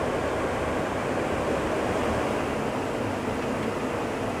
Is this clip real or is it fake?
real